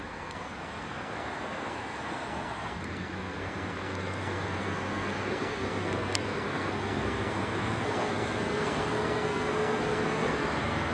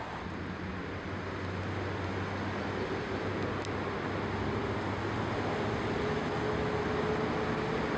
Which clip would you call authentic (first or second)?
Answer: second